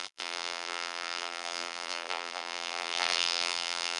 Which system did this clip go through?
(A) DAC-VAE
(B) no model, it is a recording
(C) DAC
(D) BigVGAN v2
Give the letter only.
D